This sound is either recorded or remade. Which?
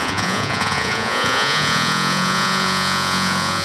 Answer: remade